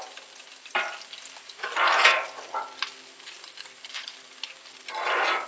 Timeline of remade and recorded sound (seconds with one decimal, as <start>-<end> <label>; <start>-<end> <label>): 0.0-2.1 recorded; 2.1-4.9 remade; 4.9-5.5 recorded